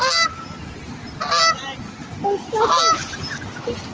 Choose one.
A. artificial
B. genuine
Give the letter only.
B